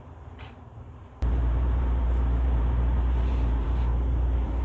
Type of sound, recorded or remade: remade